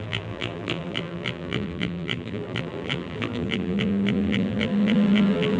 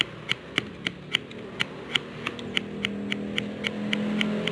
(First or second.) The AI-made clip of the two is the first